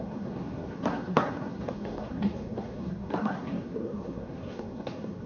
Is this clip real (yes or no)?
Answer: no